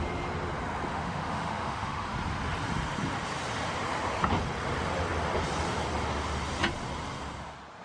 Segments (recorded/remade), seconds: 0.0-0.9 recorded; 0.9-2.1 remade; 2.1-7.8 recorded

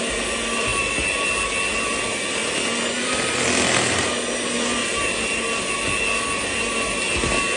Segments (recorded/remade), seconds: 0.0-7.6 recorded

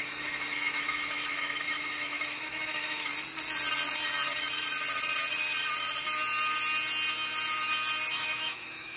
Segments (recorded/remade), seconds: 0.0-3.1 remade; 3.1-8.1 recorded; 8.1-9.0 remade

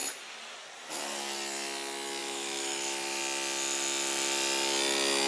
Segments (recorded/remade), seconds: 0.0-2.2 recorded; 2.2-3.2 remade; 3.2-5.3 recorded

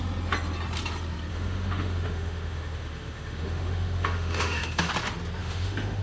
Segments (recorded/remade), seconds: 0.0-1.3 recorded; 1.3-4.9 remade; 4.9-5.4 recorded; 5.4-6.0 remade

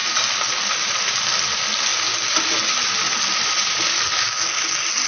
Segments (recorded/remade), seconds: 0.0-5.1 recorded

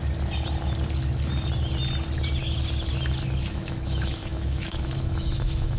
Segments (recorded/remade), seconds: 0.0-3.5 recorded; 3.5-5.8 remade

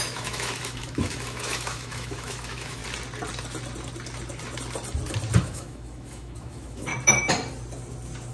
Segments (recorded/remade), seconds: 0.0-2.8 remade; 2.8-5.4 recorded; 5.4-6.9 remade; 6.9-8.3 recorded